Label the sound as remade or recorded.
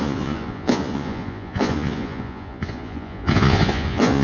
remade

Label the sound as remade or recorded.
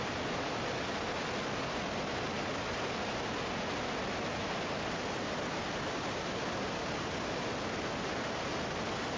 recorded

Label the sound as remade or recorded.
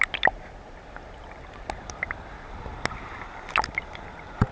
recorded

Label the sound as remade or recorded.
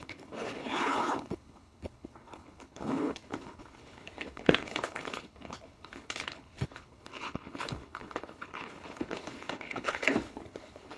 remade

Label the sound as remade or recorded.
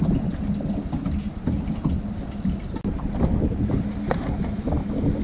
recorded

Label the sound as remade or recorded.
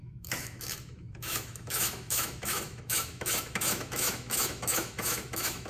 remade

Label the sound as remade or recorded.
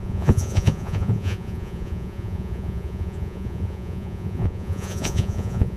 remade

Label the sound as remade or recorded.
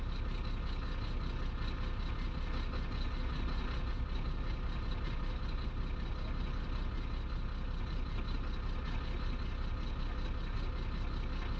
recorded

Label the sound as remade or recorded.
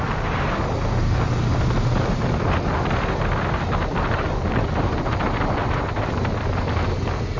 recorded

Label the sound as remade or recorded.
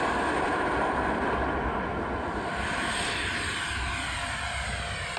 recorded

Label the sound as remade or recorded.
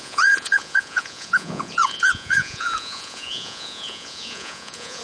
remade